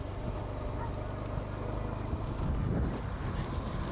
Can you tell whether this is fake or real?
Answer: real